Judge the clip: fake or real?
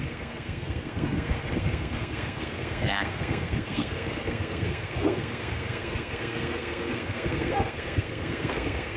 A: fake